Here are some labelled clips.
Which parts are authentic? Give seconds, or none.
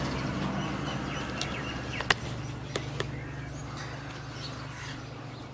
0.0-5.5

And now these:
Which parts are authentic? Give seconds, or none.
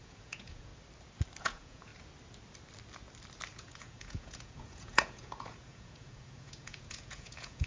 0.7-1.4; 1.9-3.5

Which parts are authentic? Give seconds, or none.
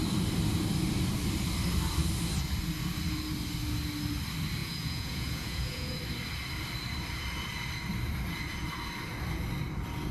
0.0-4.6; 6.0-10.1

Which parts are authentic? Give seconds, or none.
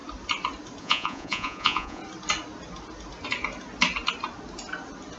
0.0-0.8; 2.0-5.2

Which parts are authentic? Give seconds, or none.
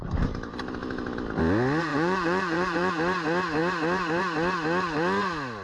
0.0-1.9; 2.9-5.6